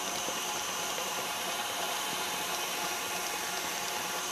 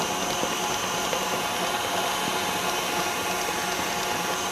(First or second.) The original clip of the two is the second